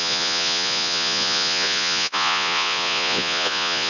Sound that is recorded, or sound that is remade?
remade